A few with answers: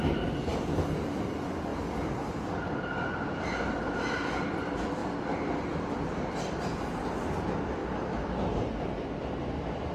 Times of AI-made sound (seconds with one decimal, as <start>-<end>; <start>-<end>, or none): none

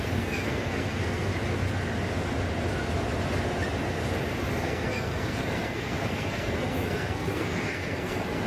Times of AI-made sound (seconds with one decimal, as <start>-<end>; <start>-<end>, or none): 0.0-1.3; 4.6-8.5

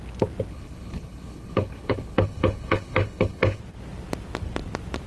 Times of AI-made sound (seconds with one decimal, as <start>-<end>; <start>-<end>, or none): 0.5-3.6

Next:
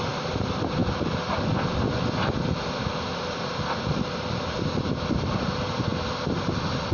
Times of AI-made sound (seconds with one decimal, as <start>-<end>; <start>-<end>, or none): none